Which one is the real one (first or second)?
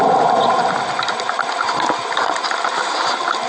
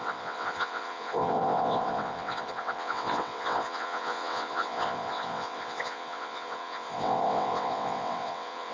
first